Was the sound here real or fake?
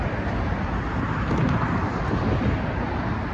real